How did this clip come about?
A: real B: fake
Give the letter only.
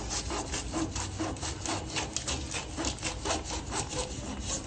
A